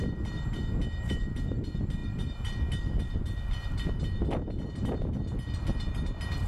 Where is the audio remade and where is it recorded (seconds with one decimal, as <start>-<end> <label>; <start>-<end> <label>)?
0.0-6.5 recorded